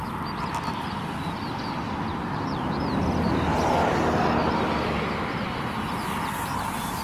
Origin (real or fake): real